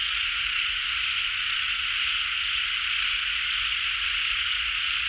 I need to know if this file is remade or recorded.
remade